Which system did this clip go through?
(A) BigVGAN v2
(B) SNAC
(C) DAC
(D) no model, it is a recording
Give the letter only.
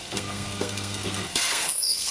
B